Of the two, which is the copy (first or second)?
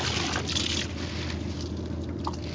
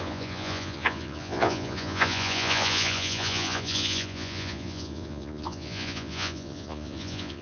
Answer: second